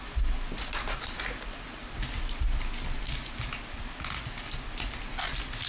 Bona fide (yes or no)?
yes